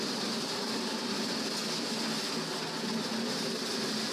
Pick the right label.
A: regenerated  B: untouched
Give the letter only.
B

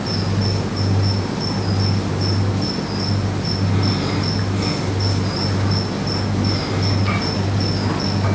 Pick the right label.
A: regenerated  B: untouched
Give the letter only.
B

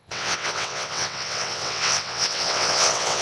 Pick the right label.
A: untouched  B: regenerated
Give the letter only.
B